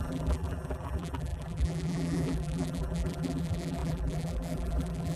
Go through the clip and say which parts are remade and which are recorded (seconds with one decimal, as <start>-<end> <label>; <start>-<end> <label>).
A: 0.0-5.2 remade